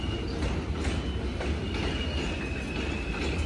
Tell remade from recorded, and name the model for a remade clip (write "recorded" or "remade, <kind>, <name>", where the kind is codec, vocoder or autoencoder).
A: recorded